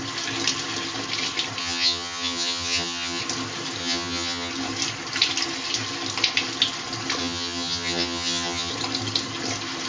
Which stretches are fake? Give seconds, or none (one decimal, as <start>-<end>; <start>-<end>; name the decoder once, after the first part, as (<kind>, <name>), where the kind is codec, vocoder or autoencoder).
1.6-3.2 (vocoder, HiFi-GAN); 3.8-4.5; 7.2-8.7

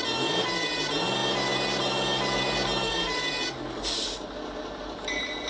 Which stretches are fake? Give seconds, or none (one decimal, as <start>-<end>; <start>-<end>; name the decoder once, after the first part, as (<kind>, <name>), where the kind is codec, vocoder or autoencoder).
none

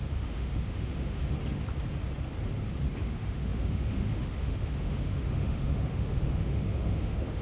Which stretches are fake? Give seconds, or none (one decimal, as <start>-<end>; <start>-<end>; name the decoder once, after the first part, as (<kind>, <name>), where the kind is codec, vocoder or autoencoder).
0.0-1.2 (autoencoder, DAC-VAE); 3.0-7.4

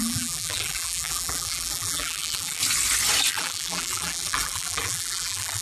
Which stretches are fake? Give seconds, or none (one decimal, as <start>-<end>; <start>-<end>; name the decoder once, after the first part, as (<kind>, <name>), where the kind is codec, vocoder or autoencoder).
0.0-2.6 (vocoder, BigVGAN v2); 3.3-5.6

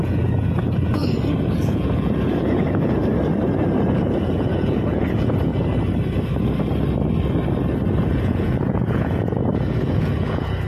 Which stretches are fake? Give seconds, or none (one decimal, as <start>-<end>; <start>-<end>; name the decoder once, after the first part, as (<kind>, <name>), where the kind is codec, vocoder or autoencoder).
0.0-1.0 (vocoder, Vocos); 1.5-3.0; 3.9-5.5; 8.1-10.7